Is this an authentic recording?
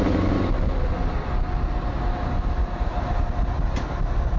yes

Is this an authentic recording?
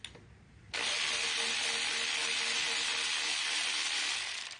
yes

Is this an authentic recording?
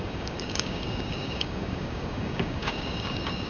no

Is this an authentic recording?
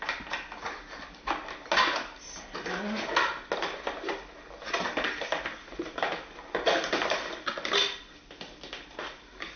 yes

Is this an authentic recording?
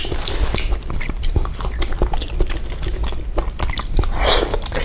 yes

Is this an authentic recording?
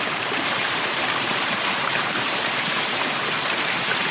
no